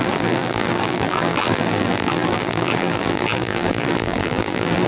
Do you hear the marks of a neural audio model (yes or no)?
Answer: yes